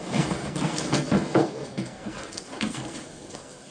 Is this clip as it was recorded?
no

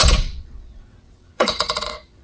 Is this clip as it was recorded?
no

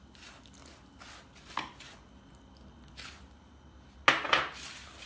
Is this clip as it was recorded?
yes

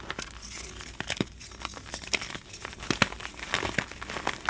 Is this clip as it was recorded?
yes